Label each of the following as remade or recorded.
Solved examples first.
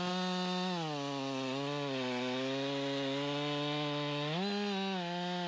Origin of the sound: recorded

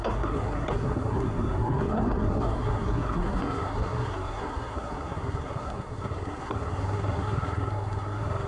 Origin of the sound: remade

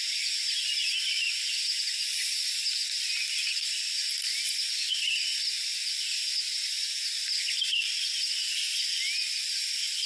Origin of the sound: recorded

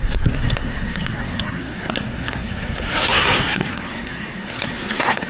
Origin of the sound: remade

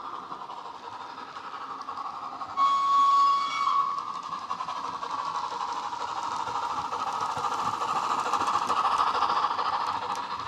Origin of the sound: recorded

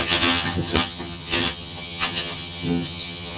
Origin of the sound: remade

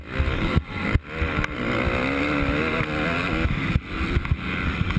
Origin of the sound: recorded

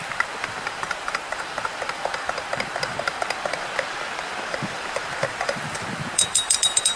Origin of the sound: remade